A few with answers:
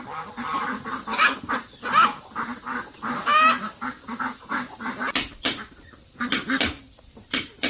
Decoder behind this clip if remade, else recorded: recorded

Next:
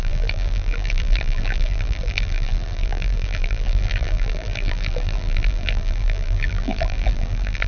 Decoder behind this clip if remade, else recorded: remade, vocoder, BigVGAN v2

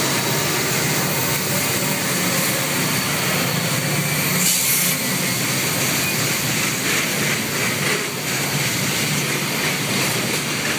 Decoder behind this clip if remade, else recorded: recorded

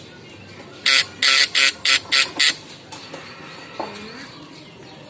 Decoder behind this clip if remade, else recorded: recorded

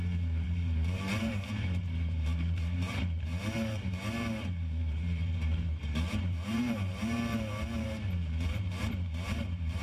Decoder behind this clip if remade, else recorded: remade, vocoder, BigVGAN v2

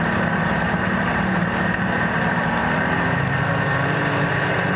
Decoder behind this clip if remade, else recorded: remade, vocoder, BigVGAN v2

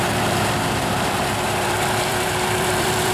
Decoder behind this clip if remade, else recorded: remade, vocoder, BigVGAN v2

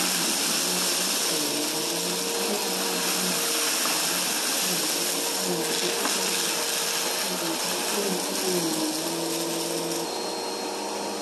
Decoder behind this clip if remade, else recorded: recorded